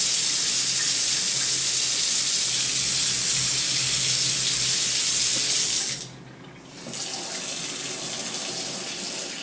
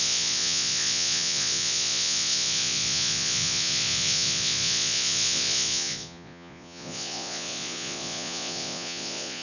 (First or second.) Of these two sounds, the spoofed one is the second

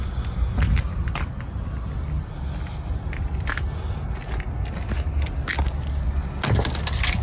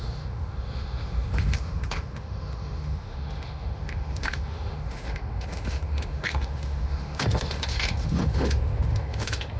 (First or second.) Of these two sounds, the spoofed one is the second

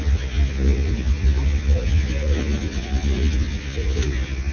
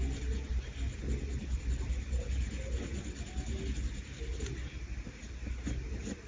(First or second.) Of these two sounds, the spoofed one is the first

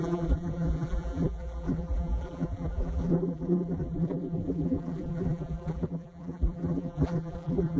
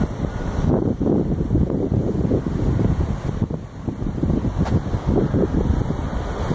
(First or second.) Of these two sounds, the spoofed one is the first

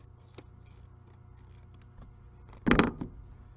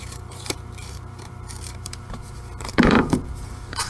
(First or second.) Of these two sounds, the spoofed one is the second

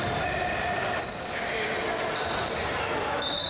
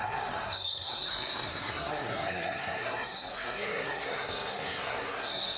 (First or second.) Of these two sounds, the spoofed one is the second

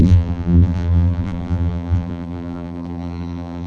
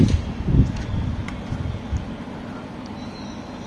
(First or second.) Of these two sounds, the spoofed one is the first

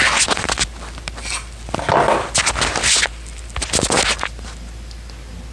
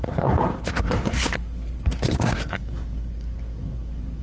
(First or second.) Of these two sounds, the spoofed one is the second